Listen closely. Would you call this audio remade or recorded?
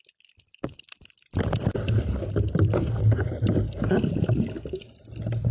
recorded